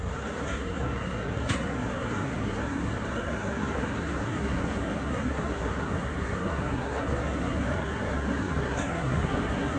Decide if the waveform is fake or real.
fake